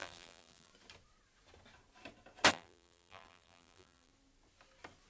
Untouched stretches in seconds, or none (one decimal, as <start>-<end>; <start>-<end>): 0.7-2.5; 4.1-5.1